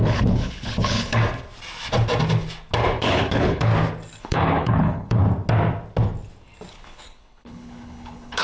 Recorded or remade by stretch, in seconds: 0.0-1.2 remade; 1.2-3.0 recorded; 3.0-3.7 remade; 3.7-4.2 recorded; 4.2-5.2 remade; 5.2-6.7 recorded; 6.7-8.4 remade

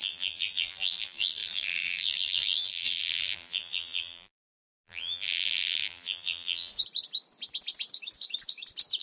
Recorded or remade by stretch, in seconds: 0.0-6.7 remade; 6.7-9.0 recorded

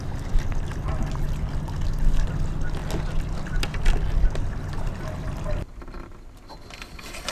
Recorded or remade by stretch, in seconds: 0.0-7.3 recorded

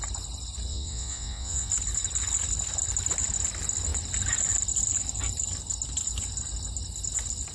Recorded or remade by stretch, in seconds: 0.0-0.7 recorded; 0.7-1.7 remade; 1.7-7.5 recorded

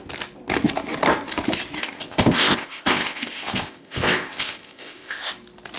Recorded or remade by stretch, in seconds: 0.0-1.8 recorded; 1.8-5.3 remade; 5.3-5.8 recorded

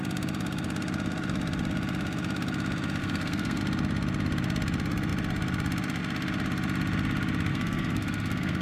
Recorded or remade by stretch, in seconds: 0.0-3.0 recorded; 3.0-3.6 remade; 3.6-7.5 recorded; 7.5-8.6 remade

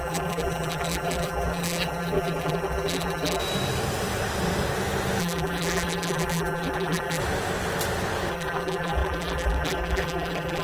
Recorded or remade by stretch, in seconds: 0.0-3.4 remade; 3.4-5.2 recorded; 5.2-7.2 remade; 7.2-8.3 recorded; 8.3-10.6 remade

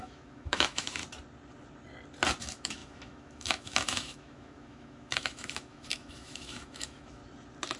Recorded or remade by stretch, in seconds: 0.0-1.0 remade; 1.0-2.4 recorded; 2.4-7.2 remade; 7.2-7.8 recorded